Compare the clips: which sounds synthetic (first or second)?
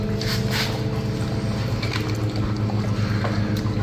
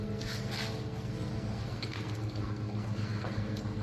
second